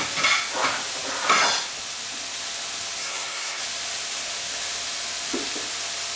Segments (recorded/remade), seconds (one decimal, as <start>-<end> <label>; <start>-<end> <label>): 0.0-3.0 recorded; 3.0-3.6 remade; 3.6-6.2 recorded